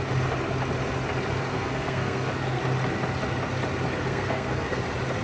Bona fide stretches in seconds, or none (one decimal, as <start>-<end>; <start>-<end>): 0.0-1.5; 2.6-4.1; 4.8-5.2